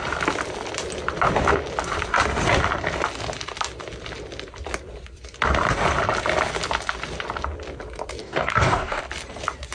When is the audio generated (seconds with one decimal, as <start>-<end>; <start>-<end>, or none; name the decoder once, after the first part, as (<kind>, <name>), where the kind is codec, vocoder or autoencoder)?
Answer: 8.2-9.0 (codec, DAC)